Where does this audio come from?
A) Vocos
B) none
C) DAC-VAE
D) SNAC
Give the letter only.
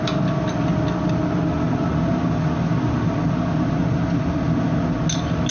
B